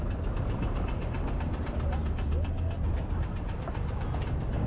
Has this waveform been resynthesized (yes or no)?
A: no